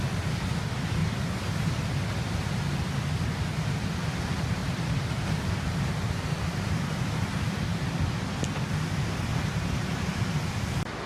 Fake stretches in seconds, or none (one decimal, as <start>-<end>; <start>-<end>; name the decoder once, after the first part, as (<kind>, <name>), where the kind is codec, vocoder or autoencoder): 4.6-8.0 (vocoder, BigVGAN v2); 9.3-10.3